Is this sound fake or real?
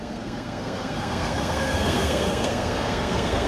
fake